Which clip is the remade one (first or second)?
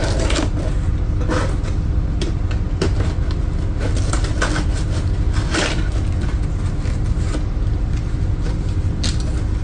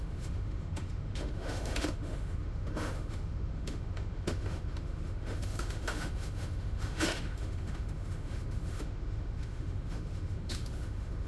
second